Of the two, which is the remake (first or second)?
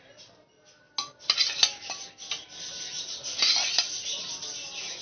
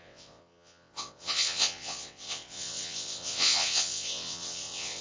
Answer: second